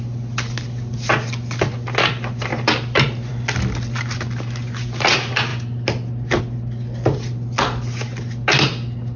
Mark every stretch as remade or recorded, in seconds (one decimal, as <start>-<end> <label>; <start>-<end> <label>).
0.0-9.2 recorded